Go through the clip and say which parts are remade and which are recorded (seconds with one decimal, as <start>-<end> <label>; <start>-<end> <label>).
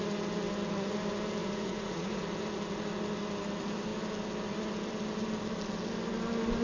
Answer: 0.0-1.4 recorded; 1.4-2.2 remade; 2.2-6.6 recorded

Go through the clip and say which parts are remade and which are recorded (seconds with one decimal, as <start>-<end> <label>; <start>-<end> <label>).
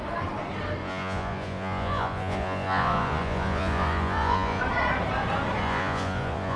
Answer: 0.0-0.8 recorded; 0.8-4.6 remade; 4.6-5.6 recorded; 5.6-6.6 remade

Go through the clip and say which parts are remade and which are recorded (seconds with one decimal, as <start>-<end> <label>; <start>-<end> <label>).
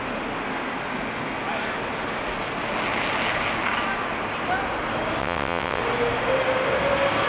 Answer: 0.0-5.2 recorded; 5.2-5.8 remade; 5.8-7.3 recorded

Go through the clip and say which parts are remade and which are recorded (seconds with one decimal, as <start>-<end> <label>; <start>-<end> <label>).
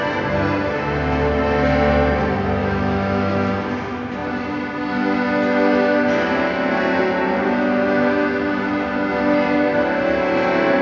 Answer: 0.0-2.6 recorded; 2.6-3.5 remade; 3.5-10.8 recorded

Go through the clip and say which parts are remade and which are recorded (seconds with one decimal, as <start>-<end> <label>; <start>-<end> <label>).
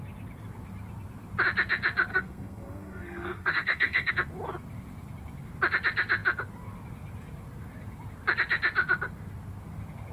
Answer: 0.0-2.1 recorded; 2.1-4.1 remade; 4.1-10.1 recorded